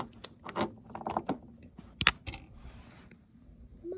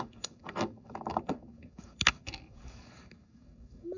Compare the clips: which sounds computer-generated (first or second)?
second